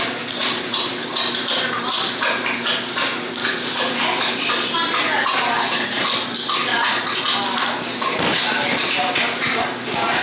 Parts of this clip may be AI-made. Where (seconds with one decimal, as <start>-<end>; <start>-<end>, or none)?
6.7-7.2